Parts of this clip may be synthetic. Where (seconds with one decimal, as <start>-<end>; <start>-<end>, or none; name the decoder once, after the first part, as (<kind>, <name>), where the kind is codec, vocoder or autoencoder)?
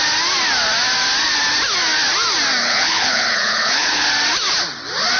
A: 2.6-4.1 (codec, HILCodec)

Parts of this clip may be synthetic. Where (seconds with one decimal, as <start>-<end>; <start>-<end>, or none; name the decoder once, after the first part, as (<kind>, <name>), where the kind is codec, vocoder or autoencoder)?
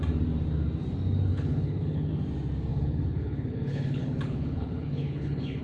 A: 1.3-2.1 (codec, HILCodec); 2.7-5.6